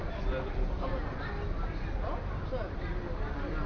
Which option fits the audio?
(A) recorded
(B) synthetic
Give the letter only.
A